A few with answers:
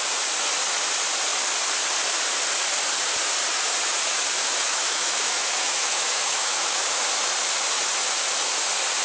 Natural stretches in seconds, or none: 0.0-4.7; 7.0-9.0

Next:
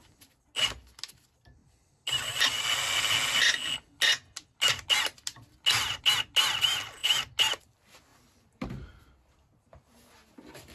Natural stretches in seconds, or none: 0.0-10.7

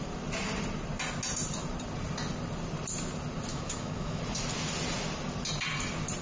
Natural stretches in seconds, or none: 0.0-3.5; 4.2-6.2